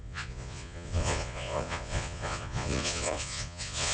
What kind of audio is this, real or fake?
fake